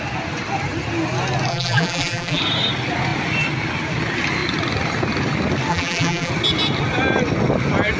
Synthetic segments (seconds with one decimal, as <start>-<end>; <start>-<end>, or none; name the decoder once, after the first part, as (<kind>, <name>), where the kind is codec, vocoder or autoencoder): 1.5-2.4 (vocoder, BigVGAN v2); 5.7-6.3